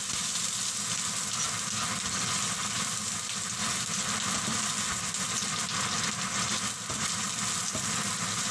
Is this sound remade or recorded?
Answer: recorded